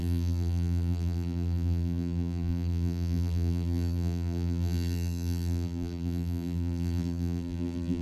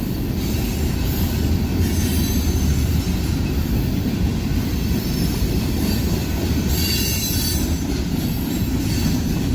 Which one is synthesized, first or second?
first